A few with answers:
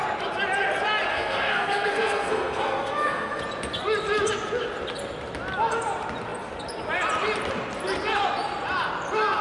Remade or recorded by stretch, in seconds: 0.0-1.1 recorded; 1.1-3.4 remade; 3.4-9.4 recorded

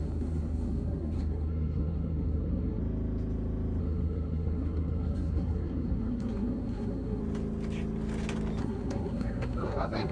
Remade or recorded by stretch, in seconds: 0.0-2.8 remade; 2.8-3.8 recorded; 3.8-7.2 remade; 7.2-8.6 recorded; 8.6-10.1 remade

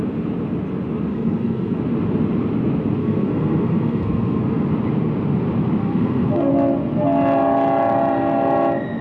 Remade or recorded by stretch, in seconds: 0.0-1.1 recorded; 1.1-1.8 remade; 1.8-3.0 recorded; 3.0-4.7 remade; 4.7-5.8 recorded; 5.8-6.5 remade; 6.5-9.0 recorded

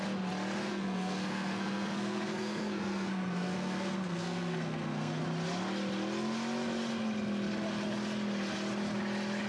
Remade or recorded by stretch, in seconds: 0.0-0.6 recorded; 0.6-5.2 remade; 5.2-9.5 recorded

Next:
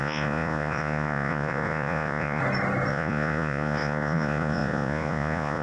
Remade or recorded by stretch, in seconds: 0.0-2.4 remade; 2.4-2.9 recorded; 2.9-5.6 remade

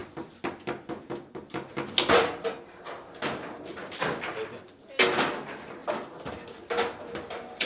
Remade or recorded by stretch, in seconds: 0.0-7.7 recorded

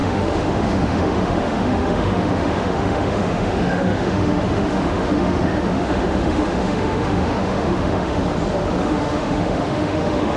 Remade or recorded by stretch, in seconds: 0.0-8.2 remade; 8.2-8.8 recorded; 8.8-10.4 remade

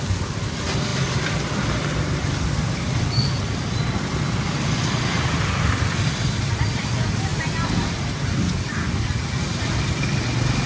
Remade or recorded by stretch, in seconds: 0.0-10.7 recorded